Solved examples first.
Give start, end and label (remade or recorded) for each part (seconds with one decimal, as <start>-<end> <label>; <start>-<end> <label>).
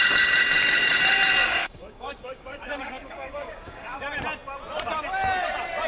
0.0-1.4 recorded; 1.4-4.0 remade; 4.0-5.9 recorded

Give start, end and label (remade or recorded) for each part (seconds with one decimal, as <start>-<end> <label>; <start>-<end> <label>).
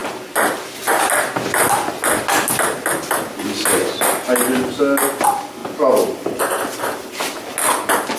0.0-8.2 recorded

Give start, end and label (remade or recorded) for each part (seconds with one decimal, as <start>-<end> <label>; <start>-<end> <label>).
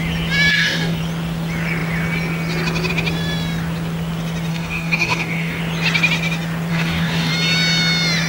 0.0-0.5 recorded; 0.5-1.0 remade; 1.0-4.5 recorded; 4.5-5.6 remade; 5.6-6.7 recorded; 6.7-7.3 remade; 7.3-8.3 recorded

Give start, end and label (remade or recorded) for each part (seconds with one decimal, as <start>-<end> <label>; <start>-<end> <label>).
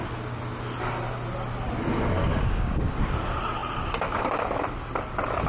0.0-2.3 recorded; 2.3-2.9 remade; 2.9-5.5 recorded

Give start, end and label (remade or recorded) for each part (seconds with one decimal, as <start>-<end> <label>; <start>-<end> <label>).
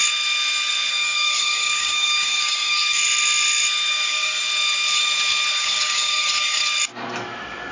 0.0-0.9 recorded; 0.9-3.0 remade; 3.0-3.9 recorded; 3.9-4.4 remade; 4.4-5.5 recorded; 5.5-6.6 remade; 6.6-7.7 recorded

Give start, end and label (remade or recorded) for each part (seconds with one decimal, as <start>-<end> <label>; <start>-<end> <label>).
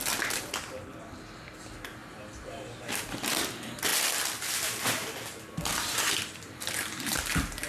0.0-7.7 recorded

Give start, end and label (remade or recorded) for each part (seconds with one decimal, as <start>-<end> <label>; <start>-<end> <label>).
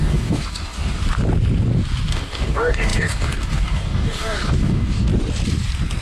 0.0-1.0 remade; 1.0-2.1 recorded; 2.1-5.1 remade; 5.1-6.0 recorded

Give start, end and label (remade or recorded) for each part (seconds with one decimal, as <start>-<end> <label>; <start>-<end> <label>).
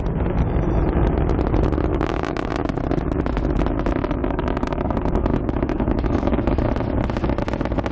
0.0-1.9 recorded; 1.9-2.5 remade; 2.5-4.2 recorded; 4.2-6.6 remade; 6.6-7.9 recorded